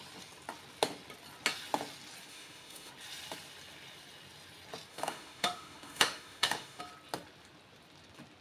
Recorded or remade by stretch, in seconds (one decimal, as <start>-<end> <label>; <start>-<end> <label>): 0.0-2.3 recorded; 2.3-2.9 remade; 2.9-4.9 recorded; 4.9-6.8 remade; 6.8-8.4 recorded